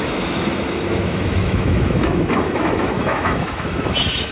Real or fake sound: fake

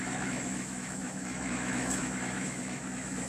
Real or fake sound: fake